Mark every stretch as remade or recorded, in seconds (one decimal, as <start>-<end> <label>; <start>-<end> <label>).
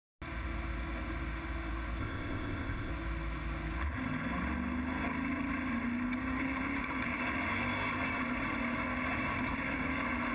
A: 0.0-2.0 recorded; 2.0-2.9 remade; 2.9-10.3 recorded